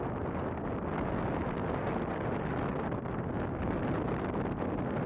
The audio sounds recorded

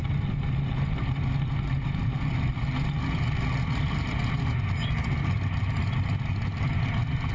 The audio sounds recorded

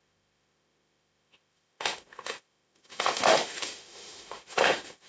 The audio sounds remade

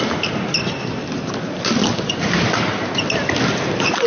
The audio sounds recorded